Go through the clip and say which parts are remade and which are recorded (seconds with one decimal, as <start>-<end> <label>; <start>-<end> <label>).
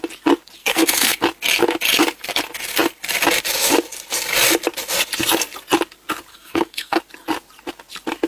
0.0-0.6 recorded; 0.6-1.2 remade; 1.2-6.3 recorded; 6.3-7.0 remade; 7.0-8.3 recorded